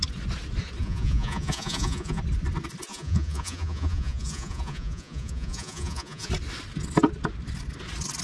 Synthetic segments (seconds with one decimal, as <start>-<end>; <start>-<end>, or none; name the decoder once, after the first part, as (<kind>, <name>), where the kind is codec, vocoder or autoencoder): 0.8-2.2 (vocoder, Vocos); 2.9-6.3